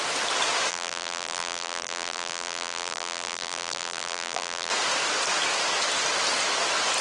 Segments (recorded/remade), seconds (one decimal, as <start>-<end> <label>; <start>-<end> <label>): 0.0-0.7 recorded; 0.7-4.7 remade; 4.7-7.0 recorded